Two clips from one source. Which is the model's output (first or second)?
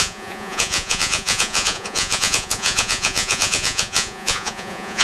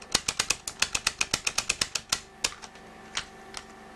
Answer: first